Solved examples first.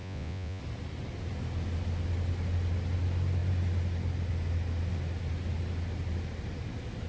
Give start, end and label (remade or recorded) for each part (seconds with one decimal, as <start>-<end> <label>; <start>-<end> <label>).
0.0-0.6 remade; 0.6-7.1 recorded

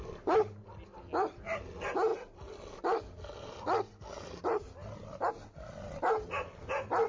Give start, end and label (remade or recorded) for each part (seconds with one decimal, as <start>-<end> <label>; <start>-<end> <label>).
0.0-7.1 recorded

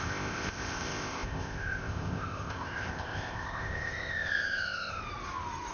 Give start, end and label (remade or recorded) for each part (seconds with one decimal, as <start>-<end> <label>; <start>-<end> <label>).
0.0-5.0 remade; 5.0-5.7 recorded

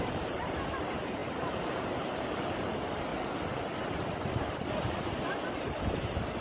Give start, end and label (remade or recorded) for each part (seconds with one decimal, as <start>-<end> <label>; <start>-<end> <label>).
0.0-3.1 remade; 3.1-5.5 recorded; 5.5-6.4 remade

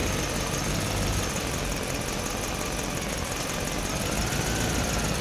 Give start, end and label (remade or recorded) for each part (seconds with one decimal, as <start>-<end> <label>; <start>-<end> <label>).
0.0-5.2 recorded

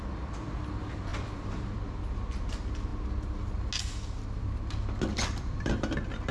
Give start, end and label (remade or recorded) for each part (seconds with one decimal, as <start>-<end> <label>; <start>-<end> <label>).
0.0-1.1 recorded; 1.1-2.0 remade; 2.0-5.1 recorded; 5.1-5.7 remade; 5.7-6.3 recorded

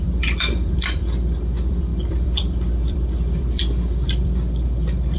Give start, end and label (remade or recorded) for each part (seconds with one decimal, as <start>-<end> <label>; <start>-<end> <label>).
0.0-5.2 remade

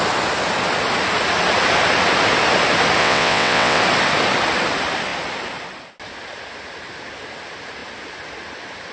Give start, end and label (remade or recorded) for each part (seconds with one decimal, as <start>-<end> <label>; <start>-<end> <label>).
0.0-3.0 recorded; 3.0-3.8 remade; 3.8-8.9 recorded